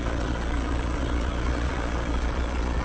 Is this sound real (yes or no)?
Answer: no